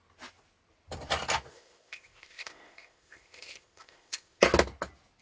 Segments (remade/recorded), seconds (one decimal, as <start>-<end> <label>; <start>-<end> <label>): 0.0-1.5 recorded; 1.5-4.4 remade; 4.4-5.2 recorded